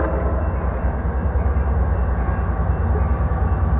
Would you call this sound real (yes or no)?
yes